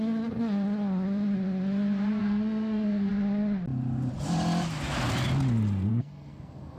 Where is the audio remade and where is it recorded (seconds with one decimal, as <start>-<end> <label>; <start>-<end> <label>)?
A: 0.0-2.2 recorded; 2.2-3.1 remade; 3.1-5.9 recorded; 5.9-6.8 remade